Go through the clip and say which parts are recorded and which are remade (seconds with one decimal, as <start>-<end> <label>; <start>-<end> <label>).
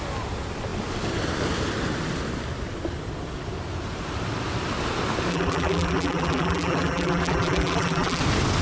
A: 0.0-5.3 recorded; 5.3-8.2 remade; 8.2-8.6 recorded